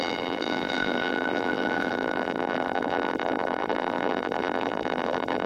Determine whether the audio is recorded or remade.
remade